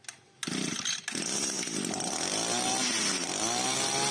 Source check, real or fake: real